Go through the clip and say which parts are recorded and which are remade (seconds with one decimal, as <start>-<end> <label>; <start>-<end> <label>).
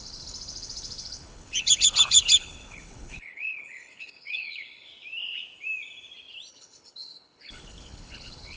0.0-4.9 remade; 4.9-6.5 recorded; 6.5-8.6 remade